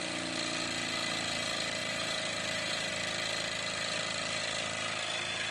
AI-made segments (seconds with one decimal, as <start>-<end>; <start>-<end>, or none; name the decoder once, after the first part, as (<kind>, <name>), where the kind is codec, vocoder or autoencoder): 1.8-2.9 (vocoder, BigVGAN v2)